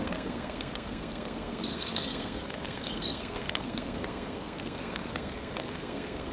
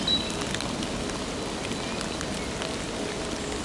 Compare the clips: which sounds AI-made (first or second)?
first